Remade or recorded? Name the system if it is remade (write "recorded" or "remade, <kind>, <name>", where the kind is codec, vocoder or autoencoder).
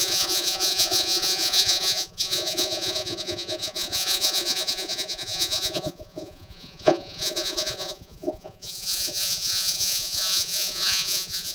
remade, vocoder, Vocos